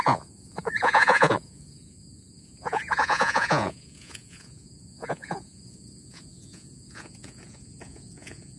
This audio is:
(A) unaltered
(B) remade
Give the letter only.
B